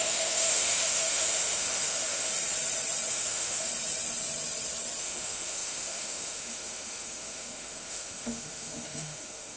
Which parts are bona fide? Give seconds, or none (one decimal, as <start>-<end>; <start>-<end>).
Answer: 2.3-3.1; 3.7-5.0